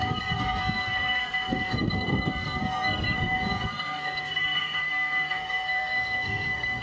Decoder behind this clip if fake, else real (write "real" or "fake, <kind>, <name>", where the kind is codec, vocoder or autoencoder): fake, codec, SNAC